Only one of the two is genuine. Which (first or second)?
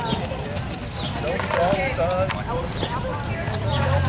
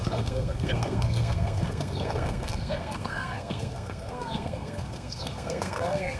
first